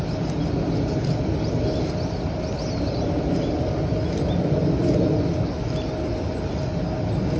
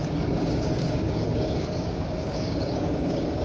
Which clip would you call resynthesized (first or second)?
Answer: second